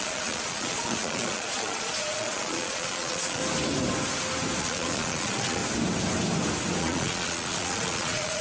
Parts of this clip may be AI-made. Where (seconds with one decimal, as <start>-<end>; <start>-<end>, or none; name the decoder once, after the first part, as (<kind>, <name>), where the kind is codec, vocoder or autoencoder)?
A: 0.0-3.4 (vocoder, Vocos); 4.6-5.6; 6.8-8.4